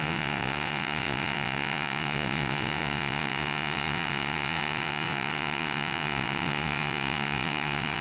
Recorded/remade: remade